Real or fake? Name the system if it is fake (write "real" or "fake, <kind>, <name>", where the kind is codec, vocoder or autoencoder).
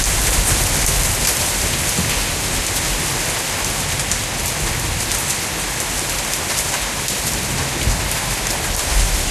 real